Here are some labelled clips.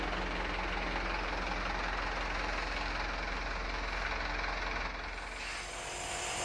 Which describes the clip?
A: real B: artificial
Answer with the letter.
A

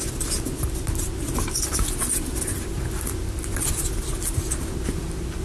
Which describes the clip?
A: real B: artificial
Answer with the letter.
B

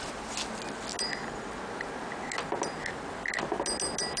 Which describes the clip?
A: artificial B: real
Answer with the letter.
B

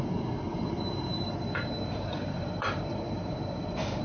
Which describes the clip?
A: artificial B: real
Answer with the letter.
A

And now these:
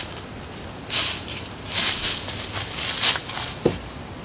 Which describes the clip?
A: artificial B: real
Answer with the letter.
B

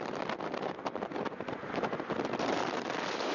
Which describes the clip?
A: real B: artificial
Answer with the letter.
B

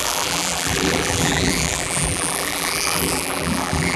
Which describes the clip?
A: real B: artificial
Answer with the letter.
B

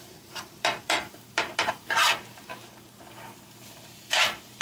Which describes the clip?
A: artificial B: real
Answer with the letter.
A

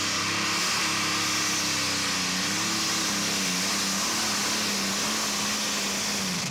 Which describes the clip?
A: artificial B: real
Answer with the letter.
B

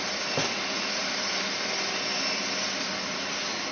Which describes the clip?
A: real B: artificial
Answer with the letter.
B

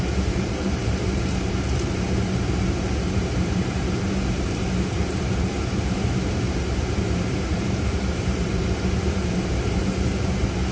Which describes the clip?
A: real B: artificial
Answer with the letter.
B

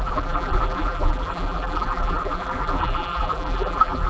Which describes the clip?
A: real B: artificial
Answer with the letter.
B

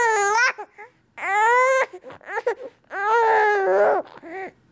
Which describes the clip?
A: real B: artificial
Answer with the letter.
A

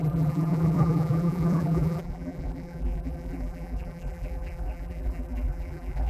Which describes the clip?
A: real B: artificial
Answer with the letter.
B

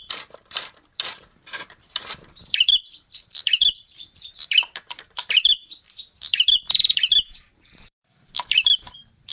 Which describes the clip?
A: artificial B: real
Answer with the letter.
A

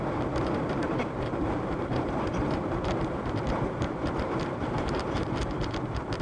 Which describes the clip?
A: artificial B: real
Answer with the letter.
A